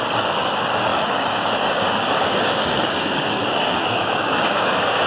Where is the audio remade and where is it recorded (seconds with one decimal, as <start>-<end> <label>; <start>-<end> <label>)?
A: 0.0-5.1 remade